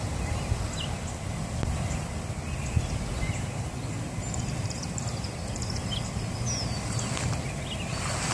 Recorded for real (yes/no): yes